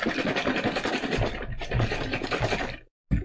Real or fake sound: real